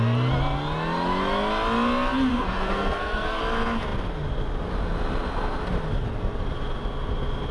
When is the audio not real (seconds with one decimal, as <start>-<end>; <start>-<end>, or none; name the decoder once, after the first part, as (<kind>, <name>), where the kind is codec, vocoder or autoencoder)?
2.3-3.4 (codec, SNAC)